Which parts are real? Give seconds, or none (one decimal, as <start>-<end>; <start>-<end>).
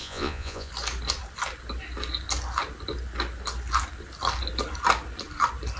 0.7-5.8